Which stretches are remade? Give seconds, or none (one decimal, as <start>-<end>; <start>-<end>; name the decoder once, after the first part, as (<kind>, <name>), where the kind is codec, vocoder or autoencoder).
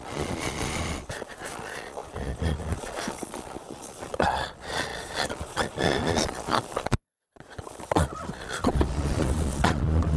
0.0-10.2 (vocoder, Vocos)